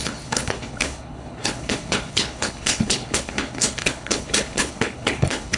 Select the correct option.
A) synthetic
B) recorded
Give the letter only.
A